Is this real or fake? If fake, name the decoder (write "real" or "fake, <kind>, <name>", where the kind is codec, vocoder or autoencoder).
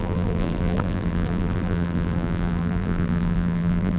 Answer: fake, vocoder, BigVGAN v2